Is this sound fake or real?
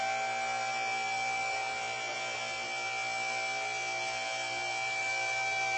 real